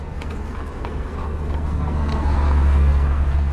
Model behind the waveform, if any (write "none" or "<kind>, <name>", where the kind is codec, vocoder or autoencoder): codec, SNAC